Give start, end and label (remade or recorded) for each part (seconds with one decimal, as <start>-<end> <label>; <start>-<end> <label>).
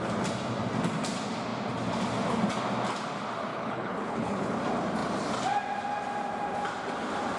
0.0-3.5 recorded; 3.5-4.5 remade; 4.5-7.4 recorded